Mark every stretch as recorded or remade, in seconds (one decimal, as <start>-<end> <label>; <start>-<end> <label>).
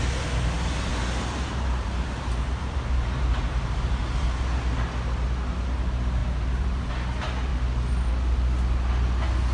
0.0-0.9 recorded; 0.9-4.4 remade; 4.4-6.2 recorded; 6.2-6.9 remade; 6.9-9.5 recorded